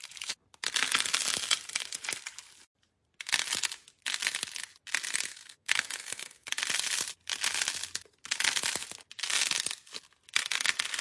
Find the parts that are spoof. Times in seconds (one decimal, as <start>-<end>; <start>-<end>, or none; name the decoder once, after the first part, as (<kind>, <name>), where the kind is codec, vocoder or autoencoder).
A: 5.3-6.5 (codec, SNAC)